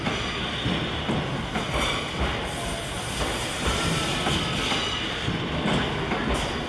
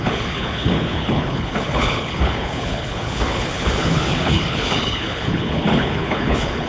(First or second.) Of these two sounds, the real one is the first